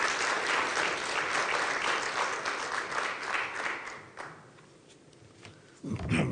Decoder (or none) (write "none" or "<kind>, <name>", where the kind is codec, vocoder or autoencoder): none